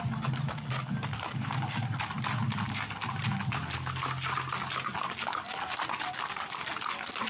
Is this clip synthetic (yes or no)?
no